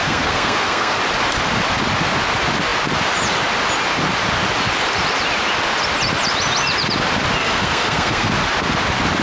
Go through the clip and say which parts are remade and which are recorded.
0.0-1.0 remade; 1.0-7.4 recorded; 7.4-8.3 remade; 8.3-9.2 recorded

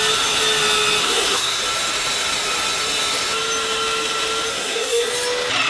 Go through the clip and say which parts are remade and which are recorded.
0.0-1.0 recorded; 1.0-1.6 remade; 1.6-4.5 recorded; 4.5-5.1 remade; 5.1-5.7 recorded

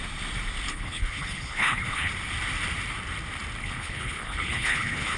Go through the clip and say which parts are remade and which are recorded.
0.0-0.7 recorded; 0.7-2.1 remade; 2.1-3.6 recorded; 3.6-5.2 remade

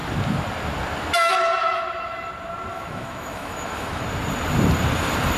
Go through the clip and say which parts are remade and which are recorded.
0.0-2.7 recorded; 2.7-4.0 remade; 4.0-5.4 recorded

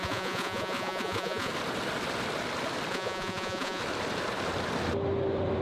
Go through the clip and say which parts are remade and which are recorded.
0.0-1.5 remade; 1.5-2.9 recorded; 2.9-3.8 remade; 3.8-5.6 recorded

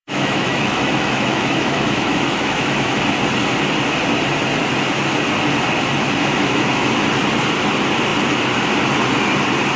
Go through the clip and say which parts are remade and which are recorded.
0.0-3.0 remade; 3.0-6.2 recorded; 6.2-6.9 remade; 6.9-9.8 recorded

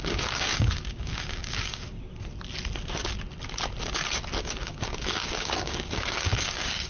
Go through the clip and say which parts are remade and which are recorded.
0.0-2.1 remade; 2.1-4.4 recorded; 4.4-6.9 remade